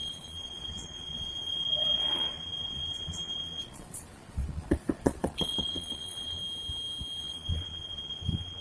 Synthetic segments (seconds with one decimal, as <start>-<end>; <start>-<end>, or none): 0.0-6.4; 7.2-8.6

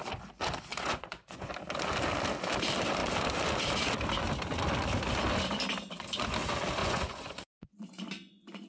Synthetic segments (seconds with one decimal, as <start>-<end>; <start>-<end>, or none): 0.7-1.5; 6.8-8.7

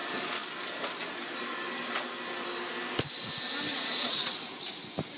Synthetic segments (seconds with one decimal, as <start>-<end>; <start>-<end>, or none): 3.7-4.5

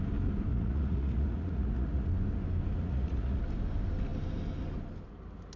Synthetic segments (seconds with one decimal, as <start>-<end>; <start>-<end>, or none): 0.5-2.1; 2.8-3.4

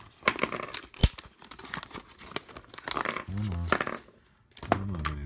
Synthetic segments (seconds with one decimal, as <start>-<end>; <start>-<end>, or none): none

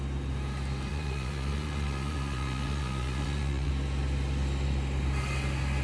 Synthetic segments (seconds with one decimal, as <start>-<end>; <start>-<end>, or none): 0.9-3.7